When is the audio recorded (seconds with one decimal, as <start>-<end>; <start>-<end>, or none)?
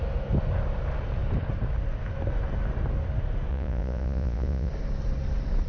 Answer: 0.0-3.5; 4.7-5.7